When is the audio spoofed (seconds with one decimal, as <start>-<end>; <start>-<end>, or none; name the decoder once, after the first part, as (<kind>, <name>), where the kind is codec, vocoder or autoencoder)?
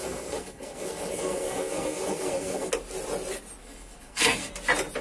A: 0.0-2.7 (codec, SNAC); 3.6-4.5